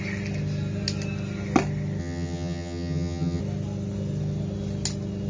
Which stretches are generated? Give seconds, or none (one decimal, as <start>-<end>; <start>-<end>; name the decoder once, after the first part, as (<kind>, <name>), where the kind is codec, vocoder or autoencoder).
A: 2.0-3.4 (vocoder, HiFi-GAN)